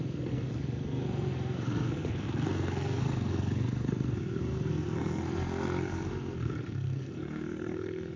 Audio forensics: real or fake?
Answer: fake